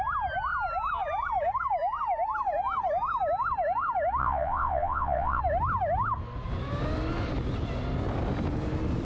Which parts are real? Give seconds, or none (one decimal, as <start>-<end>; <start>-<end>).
0.0-4.2; 5.4-9.0